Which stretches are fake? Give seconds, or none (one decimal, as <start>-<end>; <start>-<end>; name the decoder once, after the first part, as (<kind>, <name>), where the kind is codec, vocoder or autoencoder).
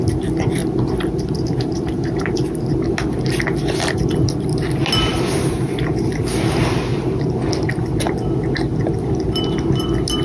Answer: 0.6-2.8 (vocoder, BigVGAN v2)